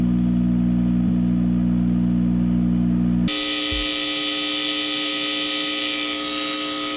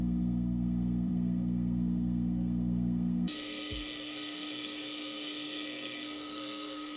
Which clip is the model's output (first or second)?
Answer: second